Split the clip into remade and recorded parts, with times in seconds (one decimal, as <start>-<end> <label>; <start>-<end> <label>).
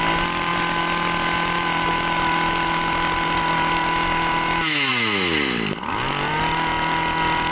0.0-7.5 recorded